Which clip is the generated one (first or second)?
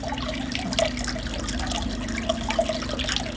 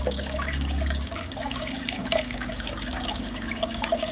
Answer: second